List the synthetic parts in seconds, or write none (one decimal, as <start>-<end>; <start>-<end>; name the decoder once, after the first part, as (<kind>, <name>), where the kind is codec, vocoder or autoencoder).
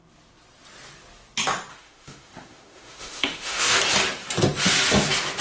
1.7-3.8 (autoencoder, DAC-VAE)